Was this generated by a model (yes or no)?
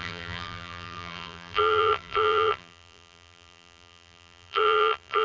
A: yes